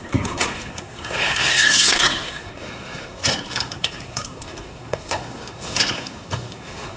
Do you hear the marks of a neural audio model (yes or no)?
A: yes